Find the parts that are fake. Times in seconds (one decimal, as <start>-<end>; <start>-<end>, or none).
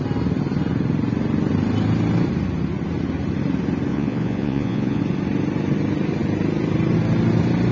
3.9-5.0